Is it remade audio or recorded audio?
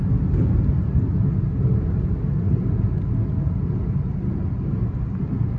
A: recorded